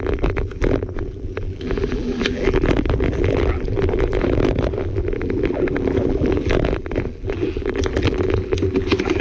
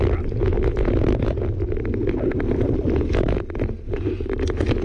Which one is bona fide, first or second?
second